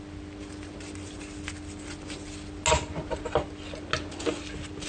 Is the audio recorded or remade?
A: recorded